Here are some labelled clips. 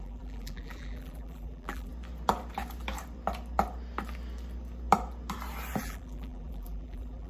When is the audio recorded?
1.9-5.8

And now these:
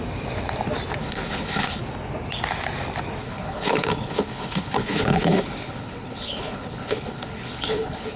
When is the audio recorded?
0.0-1.0; 1.8-3.2